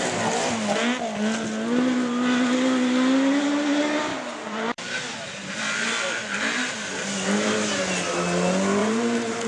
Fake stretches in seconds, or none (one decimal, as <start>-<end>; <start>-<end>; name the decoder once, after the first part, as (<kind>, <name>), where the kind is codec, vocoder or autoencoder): 4.1-5.5 (vocoder, BigVGAN v2); 8.8-9.5